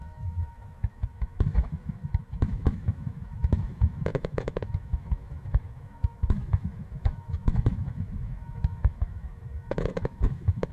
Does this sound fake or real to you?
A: fake